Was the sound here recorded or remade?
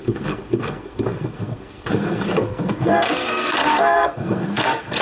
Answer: remade